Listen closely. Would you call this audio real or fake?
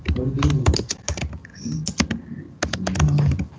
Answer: real